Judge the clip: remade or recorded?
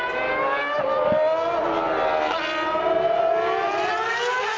recorded